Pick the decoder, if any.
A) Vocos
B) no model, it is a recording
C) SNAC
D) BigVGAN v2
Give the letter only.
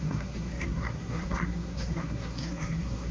C